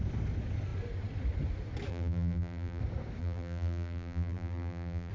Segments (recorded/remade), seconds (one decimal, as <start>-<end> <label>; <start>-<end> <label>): 0.0-1.9 recorded; 1.9-2.8 remade; 2.8-3.2 recorded; 3.2-5.1 remade